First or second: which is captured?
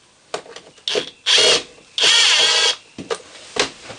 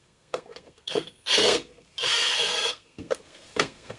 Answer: first